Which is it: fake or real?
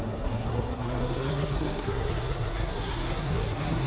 fake